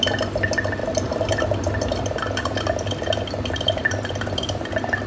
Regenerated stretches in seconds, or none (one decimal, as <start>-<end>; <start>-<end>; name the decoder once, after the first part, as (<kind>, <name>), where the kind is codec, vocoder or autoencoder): 0.8-1.4 (vocoder, BigVGAN v2)